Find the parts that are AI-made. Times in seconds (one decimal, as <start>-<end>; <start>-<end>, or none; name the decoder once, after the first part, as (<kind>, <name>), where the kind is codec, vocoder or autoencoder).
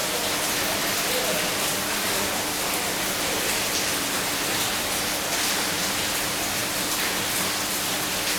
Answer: none